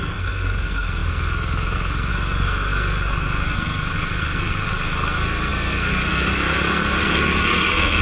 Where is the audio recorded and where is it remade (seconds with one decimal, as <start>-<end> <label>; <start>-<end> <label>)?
0.0-8.0 remade